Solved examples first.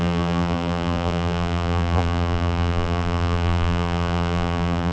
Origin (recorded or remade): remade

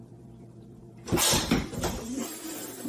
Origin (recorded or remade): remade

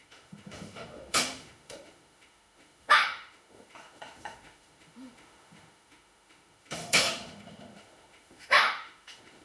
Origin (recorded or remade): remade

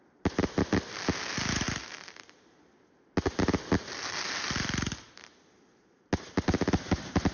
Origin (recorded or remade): recorded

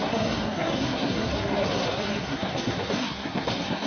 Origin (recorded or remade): remade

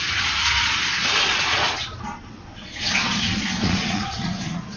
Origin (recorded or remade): remade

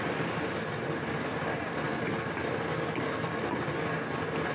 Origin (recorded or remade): recorded